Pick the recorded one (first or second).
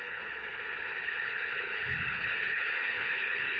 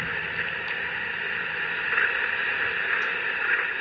second